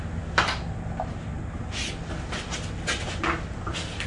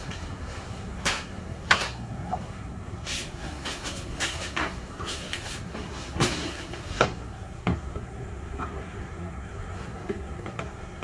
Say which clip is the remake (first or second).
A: second